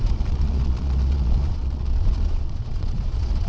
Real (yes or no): no